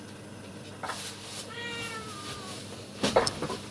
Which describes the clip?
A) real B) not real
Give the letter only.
B